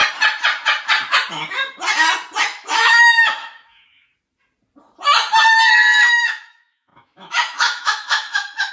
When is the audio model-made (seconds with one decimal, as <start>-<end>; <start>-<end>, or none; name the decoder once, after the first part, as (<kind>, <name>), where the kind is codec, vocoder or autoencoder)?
2.4-4.1 (autoencoder, DAC-VAE); 5.7-8.7